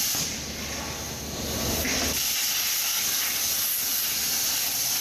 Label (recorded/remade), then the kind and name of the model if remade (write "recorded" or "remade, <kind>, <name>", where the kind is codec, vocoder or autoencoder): recorded